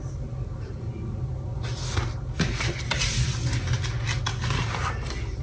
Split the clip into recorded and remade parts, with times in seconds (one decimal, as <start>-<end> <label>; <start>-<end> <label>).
0.0-5.4 recorded